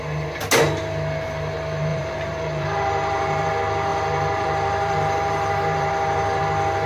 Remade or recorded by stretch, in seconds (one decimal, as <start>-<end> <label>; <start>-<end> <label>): 0.0-1.9 recorded; 1.9-3.5 remade; 3.5-3.9 recorded; 3.9-6.4 remade; 6.4-6.9 recorded